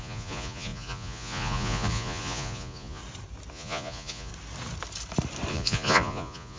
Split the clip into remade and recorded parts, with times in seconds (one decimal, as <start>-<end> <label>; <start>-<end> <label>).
0.0-3.0 remade; 3.0-3.5 recorded; 3.5-4.3 remade; 4.3-5.5 recorded; 5.5-6.6 remade